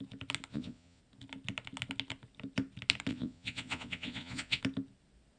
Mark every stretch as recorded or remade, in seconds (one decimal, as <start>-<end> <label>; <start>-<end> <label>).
0.0-0.5 recorded; 0.5-1.0 remade; 1.0-3.1 recorded; 3.1-4.6 remade; 4.6-5.4 recorded